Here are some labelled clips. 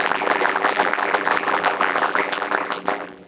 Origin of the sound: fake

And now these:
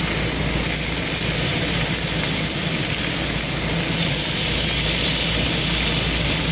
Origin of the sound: real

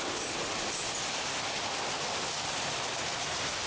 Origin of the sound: real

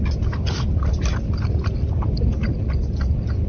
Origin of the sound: real